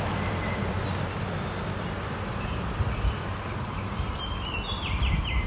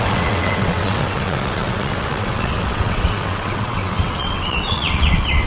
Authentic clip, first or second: first